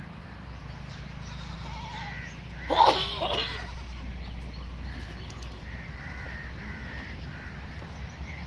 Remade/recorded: remade